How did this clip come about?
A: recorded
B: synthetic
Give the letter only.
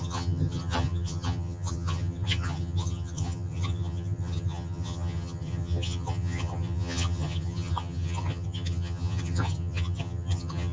B